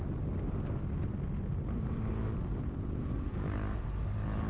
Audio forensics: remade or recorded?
recorded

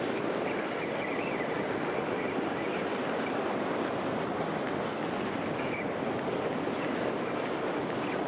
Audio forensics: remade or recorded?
recorded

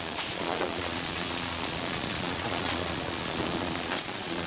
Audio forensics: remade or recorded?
remade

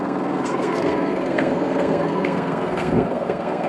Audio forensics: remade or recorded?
remade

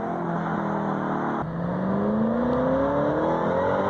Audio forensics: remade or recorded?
recorded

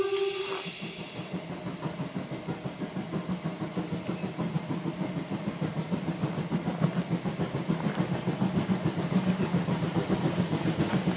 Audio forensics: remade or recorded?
recorded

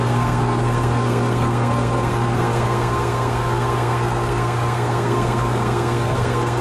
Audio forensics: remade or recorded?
remade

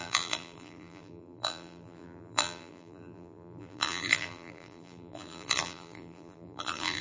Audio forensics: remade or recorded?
remade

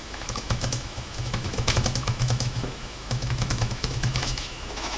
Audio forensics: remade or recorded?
remade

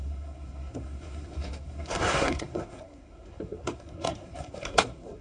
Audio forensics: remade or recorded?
remade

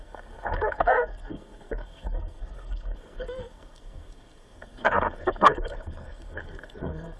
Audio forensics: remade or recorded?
remade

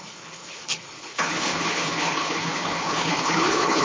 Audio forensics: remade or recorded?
remade